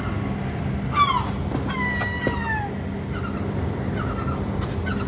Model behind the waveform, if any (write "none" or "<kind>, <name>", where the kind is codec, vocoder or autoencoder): none